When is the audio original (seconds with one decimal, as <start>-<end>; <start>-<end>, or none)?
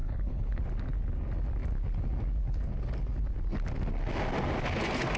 0.6-5.2